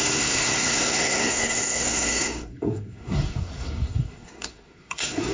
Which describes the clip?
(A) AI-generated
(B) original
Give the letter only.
A